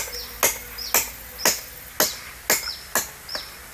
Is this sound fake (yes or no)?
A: no